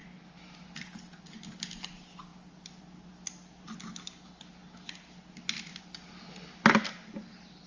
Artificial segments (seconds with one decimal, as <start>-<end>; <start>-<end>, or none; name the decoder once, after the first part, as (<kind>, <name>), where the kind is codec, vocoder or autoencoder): none